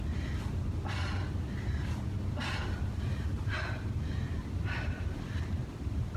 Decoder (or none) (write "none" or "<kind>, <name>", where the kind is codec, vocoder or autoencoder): none